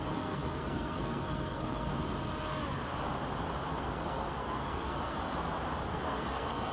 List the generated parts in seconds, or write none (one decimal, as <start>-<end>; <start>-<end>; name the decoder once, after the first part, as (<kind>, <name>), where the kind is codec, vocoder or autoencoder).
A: 0.0-1.9 (codec, SNAC); 3.7-5.3; 5.9-6.7